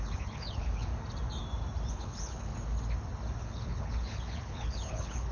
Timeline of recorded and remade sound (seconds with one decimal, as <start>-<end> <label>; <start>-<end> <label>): 0.0-0.9 remade; 0.9-1.9 recorded; 1.9-2.5 remade; 2.5-3.4 recorded; 3.4-5.3 remade